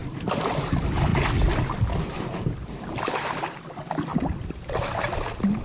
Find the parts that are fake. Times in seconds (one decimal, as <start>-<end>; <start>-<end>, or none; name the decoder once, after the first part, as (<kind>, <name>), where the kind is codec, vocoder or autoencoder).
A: 0.0-0.5 (vocoder, BigVGAN v2); 1.1-4.5